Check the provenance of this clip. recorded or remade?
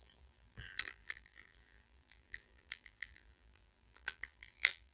remade